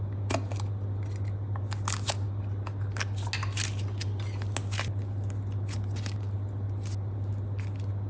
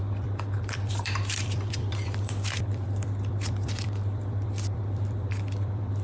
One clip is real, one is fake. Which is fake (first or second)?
second